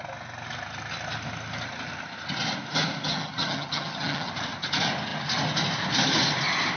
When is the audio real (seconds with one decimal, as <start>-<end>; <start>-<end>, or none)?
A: 0.0-3.1; 4.3-6.8